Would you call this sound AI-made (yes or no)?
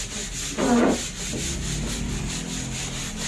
no